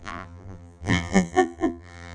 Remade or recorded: remade